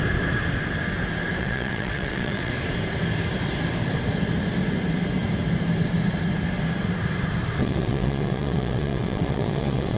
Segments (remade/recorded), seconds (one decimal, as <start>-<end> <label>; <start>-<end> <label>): 0.0-1.4 recorded; 1.4-2.5 remade; 2.5-7.6 recorded; 7.6-10.0 remade